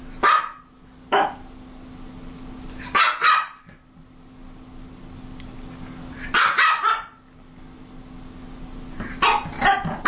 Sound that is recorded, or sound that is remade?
recorded